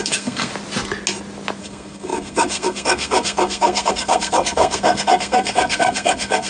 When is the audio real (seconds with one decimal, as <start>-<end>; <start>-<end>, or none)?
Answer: 0.5-1.6